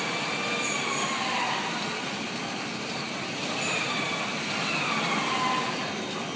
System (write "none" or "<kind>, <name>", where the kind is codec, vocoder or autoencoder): none